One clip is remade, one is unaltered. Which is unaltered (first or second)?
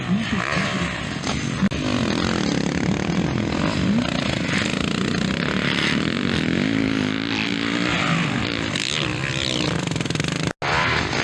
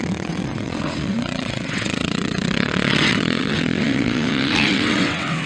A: first